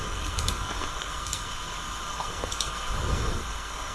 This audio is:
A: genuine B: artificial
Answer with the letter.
B